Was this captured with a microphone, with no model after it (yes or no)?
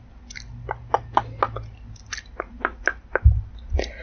yes